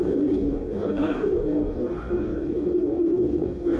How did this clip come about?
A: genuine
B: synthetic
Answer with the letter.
B